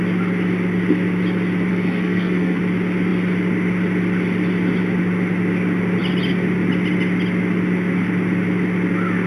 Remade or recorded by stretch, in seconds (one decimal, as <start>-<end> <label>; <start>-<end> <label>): 0.0-1.7 recorded; 1.7-2.6 remade; 2.6-9.3 recorded